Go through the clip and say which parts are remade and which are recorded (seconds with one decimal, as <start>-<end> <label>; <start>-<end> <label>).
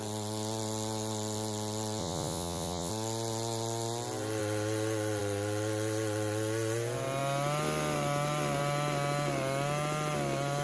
0.0-2.0 recorded; 2.0-2.9 remade; 2.9-10.6 recorded